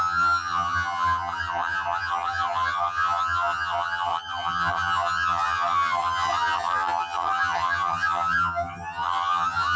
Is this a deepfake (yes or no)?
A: yes